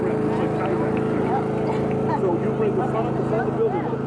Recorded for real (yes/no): yes